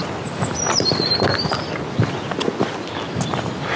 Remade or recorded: recorded